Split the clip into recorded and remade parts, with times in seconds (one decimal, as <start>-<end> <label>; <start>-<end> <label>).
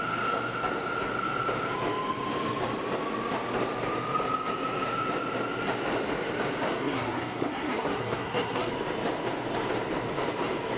0.0-6.7 recorded; 6.7-8.7 remade; 8.7-10.8 recorded